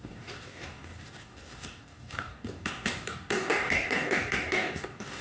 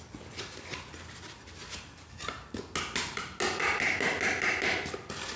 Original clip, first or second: second